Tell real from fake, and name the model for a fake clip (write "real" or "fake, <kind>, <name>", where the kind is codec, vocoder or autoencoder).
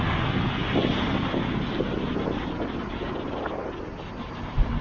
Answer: real